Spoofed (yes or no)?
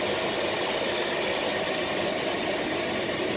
no